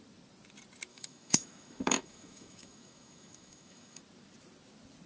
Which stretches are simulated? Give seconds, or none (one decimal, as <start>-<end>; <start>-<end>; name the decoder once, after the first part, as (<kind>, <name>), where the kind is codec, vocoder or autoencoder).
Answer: 0.9-4.0 (autoencoder, DAC-VAE)